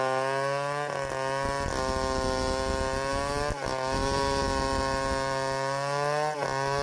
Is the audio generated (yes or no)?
no